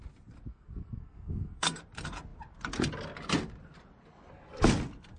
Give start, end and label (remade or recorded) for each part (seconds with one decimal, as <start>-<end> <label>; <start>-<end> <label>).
0.0-0.5 recorded; 0.5-1.8 remade; 1.8-5.2 recorded